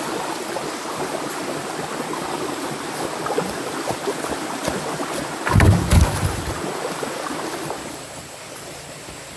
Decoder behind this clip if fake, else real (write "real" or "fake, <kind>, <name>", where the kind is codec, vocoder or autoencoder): real